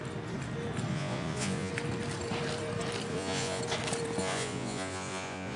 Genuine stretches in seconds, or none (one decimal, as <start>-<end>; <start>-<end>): 0.0-0.9; 1.7-3.1; 3.6-4.2